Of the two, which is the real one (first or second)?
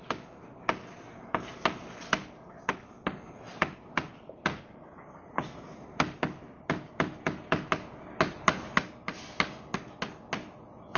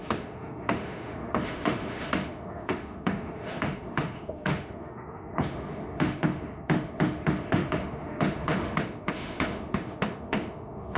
first